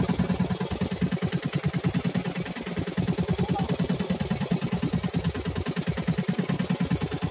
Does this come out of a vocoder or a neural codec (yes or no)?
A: no